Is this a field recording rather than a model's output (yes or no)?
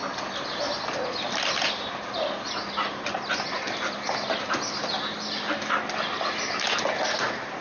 yes